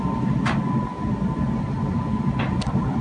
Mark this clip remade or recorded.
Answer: recorded